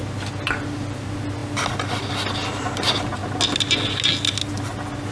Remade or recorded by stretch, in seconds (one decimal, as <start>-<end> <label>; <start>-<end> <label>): 0.0-5.1 recorded